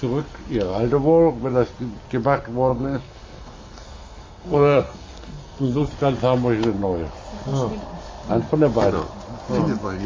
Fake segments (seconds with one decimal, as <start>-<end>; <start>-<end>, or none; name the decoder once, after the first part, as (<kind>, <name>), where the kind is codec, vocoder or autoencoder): 2.7-5.9 (codec, SNAC)